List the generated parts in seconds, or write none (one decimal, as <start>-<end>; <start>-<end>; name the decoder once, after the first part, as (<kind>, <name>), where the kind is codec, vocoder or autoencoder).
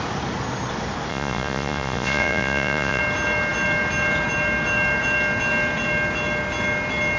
1.1-3.0 (vocoder, Vocos)